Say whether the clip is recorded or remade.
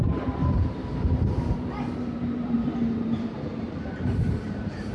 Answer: remade